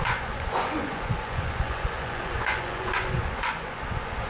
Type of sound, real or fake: fake